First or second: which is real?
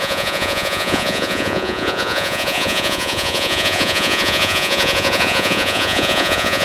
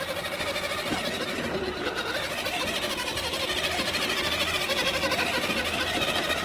second